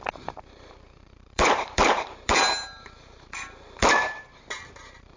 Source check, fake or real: fake